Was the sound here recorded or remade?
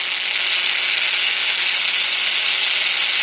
recorded